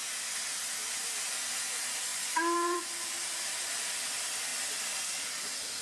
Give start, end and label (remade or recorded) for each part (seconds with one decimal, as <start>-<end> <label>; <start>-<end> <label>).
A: 0.0-2.1 recorded; 2.1-2.9 remade; 2.9-5.8 recorded